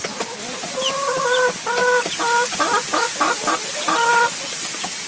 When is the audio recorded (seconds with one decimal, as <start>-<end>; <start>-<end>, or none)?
0.0-5.1